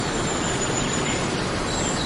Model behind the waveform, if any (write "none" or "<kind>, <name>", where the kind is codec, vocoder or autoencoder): none